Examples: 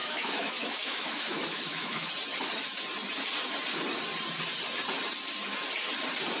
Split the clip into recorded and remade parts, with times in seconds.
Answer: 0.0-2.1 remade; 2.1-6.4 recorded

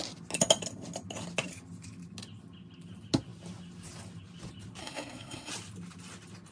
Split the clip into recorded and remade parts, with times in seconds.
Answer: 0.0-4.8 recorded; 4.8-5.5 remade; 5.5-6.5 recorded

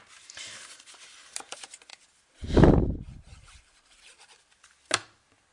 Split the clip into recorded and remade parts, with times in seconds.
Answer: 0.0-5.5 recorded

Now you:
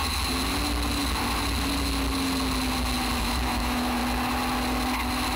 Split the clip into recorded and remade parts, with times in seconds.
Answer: 0.0-3.2 recorded; 3.2-4.0 remade; 4.0-5.4 recorded

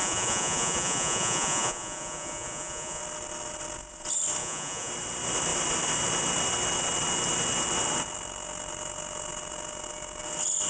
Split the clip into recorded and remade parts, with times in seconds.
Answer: 0.0-3.0 remade; 3.0-4.4 recorded; 4.4-4.9 remade; 4.9-10.7 recorded

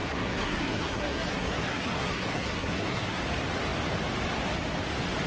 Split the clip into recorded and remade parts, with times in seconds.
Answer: 0.0-3.2 remade; 3.2-5.3 recorded

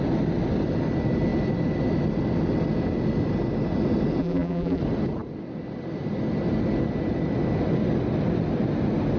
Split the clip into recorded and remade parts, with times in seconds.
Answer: 0.0-4.2 recorded; 4.2-4.8 remade; 4.8-9.2 recorded